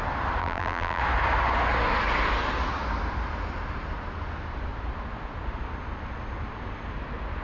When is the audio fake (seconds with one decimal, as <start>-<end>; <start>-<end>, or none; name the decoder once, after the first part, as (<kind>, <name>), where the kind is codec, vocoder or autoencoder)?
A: 0.4-1.0 (vocoder, BigVGAN v2)